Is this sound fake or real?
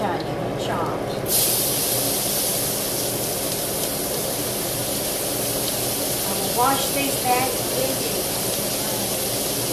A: real